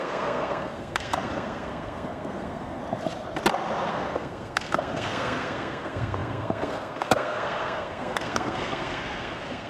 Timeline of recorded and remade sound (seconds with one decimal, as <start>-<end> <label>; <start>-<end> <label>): 0.0-2.8 remade; 2.8-3.9 recorded; 3.9-9.7 remade